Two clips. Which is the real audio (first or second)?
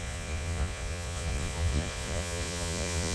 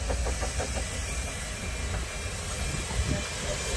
second